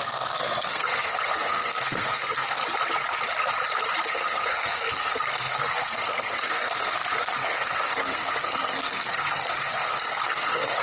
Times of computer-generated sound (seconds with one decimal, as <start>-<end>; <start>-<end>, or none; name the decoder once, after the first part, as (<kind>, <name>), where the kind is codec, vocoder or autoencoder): 0.0-2.6 (codec, SNAC); 4.1-10.8